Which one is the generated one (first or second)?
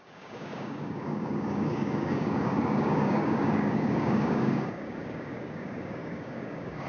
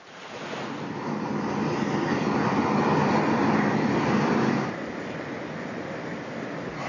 first